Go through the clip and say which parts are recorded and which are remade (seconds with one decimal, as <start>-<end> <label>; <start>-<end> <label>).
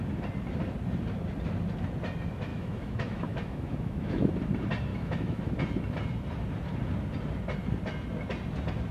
0.0-2.5 recorded; 2.5-4.3 remade; 4.3-4.9 recorded; 4.9-5.5 remade; 5.5-8.9 recorded